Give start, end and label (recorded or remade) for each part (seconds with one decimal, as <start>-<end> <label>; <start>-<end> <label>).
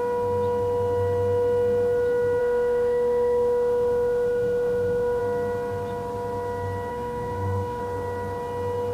0.0-2.4 recorded; 2.4-5.2 remade; 5.2-6.9 recorded; 6.9-7.8 remade; 7.8-8.9 recorded